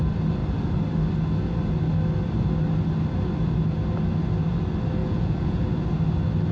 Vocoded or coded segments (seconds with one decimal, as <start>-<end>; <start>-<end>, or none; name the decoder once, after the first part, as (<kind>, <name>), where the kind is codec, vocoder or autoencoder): 5.0-5.7 (vocoder, Vocos)